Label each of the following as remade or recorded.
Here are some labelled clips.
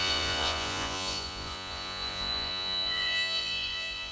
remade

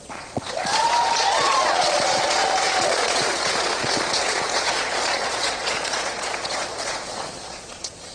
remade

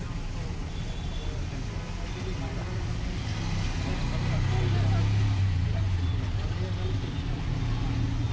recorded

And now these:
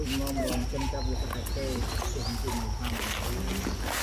recorded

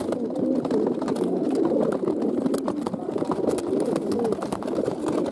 recorded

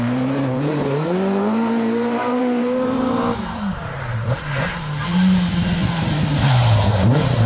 remade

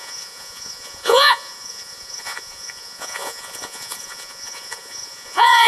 remade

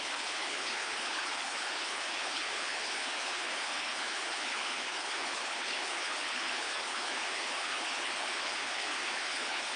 remade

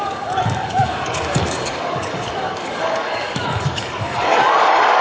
remade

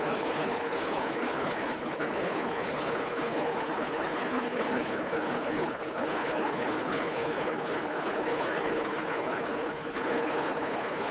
remade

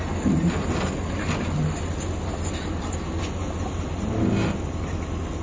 recorded